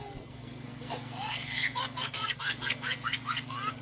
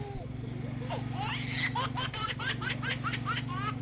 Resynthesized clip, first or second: first